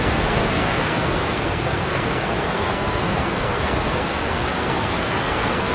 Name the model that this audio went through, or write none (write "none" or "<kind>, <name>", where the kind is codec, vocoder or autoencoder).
codec, SNAC